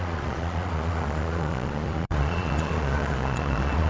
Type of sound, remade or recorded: remade